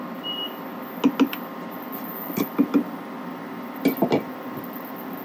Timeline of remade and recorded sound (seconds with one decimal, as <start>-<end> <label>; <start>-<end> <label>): 0.0-5.2 recorded